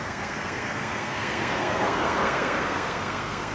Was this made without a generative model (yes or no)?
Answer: no